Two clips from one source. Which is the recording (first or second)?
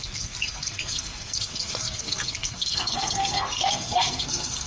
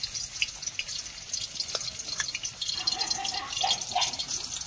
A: second